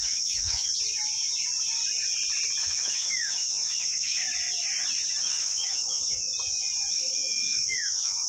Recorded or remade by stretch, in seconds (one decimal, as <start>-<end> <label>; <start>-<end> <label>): 0.0-0.7 remade; 0.7-2.6 recorded; 2.6-4.2 remade; 4.2-5.2 recorded; 5.2-6.3 remade; 6.3-6.9 recorded; 6.9-8.3 remade